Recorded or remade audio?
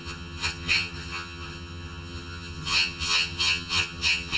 remade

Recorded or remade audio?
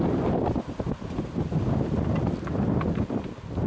recorded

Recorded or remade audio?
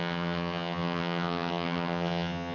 remade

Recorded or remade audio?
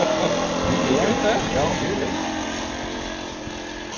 recorded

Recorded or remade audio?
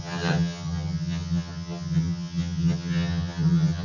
remade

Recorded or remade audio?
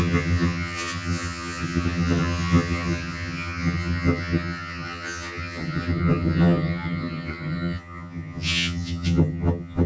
remade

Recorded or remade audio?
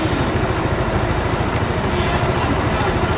recorded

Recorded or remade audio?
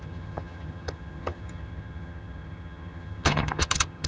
remade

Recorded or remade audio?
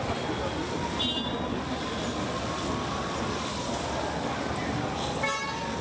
recorded